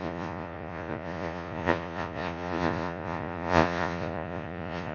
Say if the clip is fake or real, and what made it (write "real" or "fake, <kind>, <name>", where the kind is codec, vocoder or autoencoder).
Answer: fake, vocoder, Vocos